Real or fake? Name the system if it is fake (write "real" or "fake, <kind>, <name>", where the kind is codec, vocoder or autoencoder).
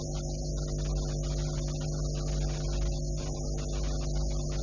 real